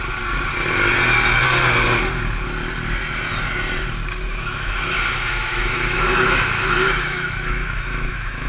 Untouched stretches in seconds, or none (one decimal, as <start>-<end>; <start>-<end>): 0.0-4.3